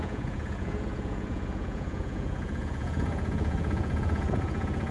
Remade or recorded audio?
remade